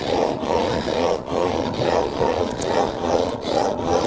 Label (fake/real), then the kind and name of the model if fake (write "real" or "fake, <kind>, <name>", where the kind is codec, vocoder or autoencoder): fake, vocoder, Vocos